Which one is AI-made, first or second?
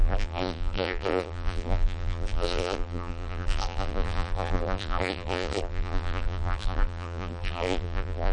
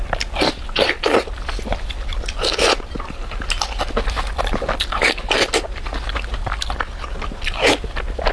first